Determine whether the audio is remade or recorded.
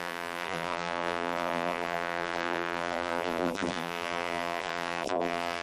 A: remade